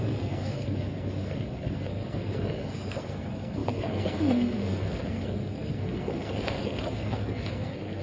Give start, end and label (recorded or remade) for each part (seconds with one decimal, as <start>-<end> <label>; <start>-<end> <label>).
0.0-8.0 remade